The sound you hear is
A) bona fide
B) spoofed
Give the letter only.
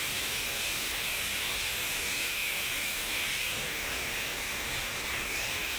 B